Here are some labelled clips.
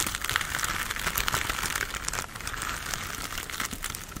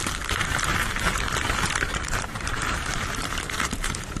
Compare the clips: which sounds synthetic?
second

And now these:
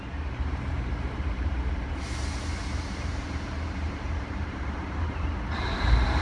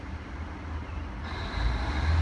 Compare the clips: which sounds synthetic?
first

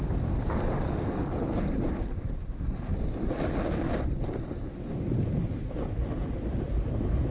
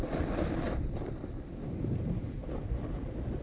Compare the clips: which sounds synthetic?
second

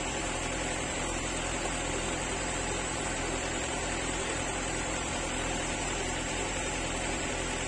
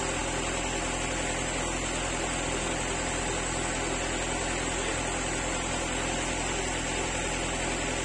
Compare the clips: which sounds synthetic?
first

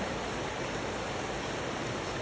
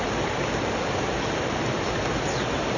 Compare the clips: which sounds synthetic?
second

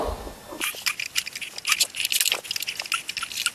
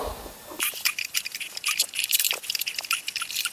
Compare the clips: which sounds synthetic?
second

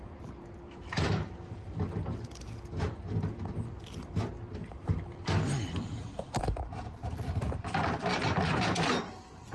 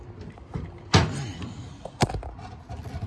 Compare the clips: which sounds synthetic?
second